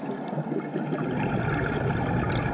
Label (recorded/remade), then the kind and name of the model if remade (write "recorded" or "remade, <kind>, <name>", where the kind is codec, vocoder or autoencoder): recorded